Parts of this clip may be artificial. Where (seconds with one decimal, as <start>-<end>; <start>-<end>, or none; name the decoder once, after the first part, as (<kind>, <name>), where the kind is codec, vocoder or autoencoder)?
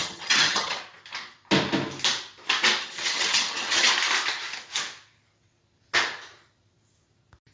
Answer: 0.0-0.8 (vocoder, HiFi-GAN); 2.8-3.9